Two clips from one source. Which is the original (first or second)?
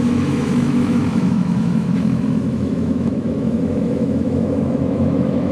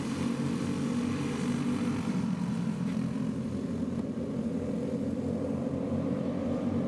second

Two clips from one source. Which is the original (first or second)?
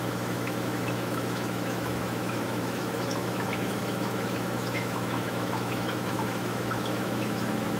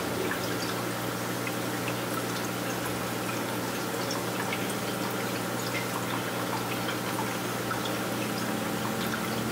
second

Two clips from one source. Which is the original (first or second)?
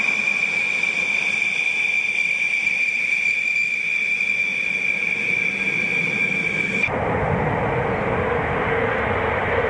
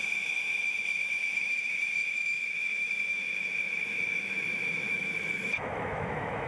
first